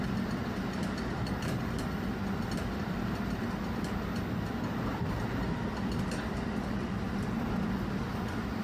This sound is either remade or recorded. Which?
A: recorded